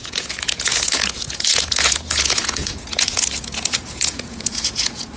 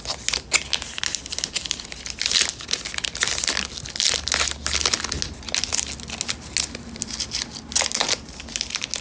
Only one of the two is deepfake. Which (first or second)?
first